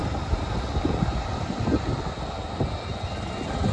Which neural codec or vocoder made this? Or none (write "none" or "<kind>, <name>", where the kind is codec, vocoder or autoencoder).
none